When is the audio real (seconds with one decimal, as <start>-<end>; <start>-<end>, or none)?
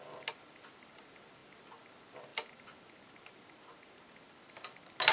0.0-5.1